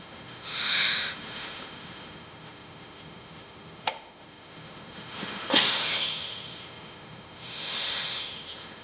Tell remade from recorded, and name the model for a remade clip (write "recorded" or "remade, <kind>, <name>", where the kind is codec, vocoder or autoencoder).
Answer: remade, autoencoder, DAC-VAE